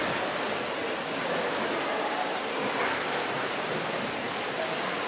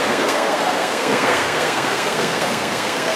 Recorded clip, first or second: first